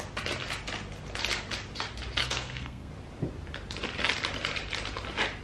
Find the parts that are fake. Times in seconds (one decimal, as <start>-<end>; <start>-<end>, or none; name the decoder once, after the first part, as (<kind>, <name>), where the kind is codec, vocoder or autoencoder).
2.2-2.9 (codec, SNAC)